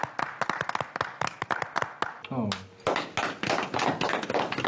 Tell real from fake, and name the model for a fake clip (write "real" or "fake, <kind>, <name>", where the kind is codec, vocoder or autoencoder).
real